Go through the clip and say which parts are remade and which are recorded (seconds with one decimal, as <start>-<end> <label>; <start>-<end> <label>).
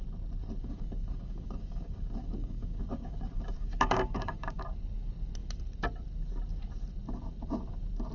0.0-0.6 recorded; 0.6-4.6 remade; 4.6-8.1 recorded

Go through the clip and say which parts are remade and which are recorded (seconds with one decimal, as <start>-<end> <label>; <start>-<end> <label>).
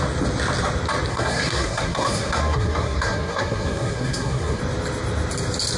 0.0-1.1 recorded; 1.1-4.6 remade; 4.6-5.8 recorded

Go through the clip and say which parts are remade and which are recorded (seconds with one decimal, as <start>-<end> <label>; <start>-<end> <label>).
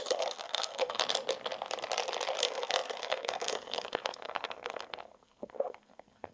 0.0-1.0 remade; 1.0-2.4 recorded; 2.4-6.3 remade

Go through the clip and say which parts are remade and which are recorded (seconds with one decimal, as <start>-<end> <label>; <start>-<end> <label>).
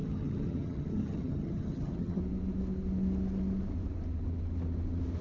0.0-2.2 remade; 2.2-5.2 recorded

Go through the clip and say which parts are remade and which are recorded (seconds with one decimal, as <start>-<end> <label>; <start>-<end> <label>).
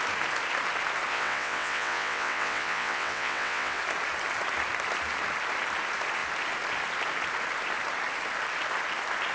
0.0-1.1 recorded; 1.1-3.8 remade; 3.8-9.3 recorded